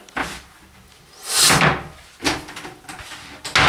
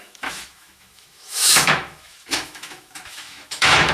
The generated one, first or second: second